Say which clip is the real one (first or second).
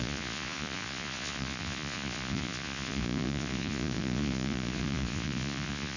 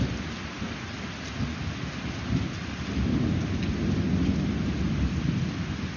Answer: second